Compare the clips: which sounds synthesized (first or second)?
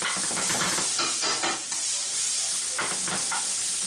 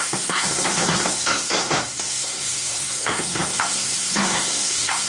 second